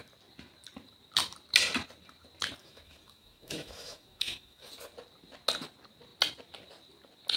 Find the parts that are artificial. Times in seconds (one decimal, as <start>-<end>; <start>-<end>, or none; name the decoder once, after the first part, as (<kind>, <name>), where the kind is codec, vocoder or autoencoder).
2.6-4.7 (autoencoder, DAC-VAE)